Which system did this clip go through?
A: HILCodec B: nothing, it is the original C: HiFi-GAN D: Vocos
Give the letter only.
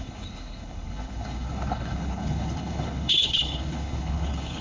A